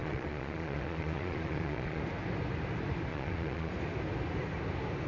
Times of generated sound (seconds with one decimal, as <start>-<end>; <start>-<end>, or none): 0.0-2.0; 3.1-3.7